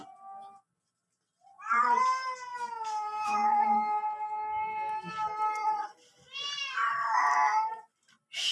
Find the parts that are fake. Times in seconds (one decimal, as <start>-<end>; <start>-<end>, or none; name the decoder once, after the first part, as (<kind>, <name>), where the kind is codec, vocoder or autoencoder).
2.5-5.1 (codec, DAC)